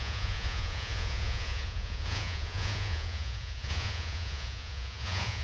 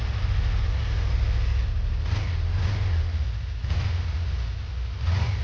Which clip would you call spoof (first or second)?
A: first